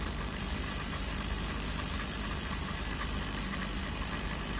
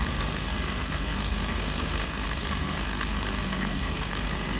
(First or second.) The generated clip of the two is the second